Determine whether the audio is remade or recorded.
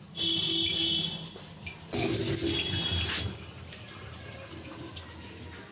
recorded